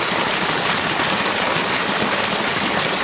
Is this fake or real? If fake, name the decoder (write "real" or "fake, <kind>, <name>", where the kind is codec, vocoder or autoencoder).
real